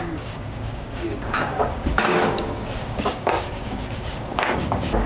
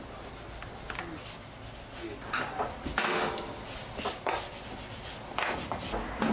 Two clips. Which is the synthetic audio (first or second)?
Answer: first